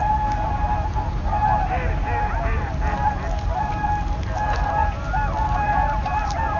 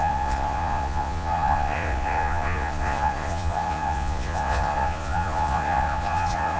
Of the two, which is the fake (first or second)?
second